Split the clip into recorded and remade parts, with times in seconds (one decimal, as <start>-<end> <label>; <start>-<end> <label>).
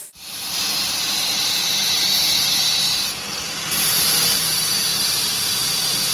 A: 0.0-6.1 remade